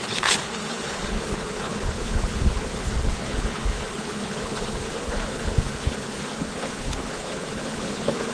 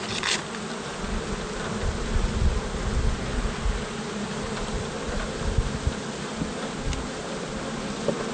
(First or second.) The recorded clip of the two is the second